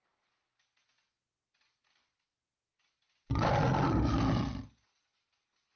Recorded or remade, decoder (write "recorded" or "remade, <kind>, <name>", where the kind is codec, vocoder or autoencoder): recorded